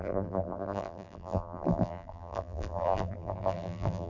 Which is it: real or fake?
fake